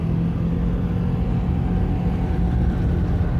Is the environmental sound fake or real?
real